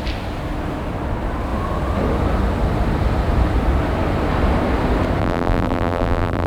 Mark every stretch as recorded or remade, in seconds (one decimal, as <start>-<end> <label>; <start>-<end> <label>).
0.0-5.2 recorded; 5.2-6.5 remade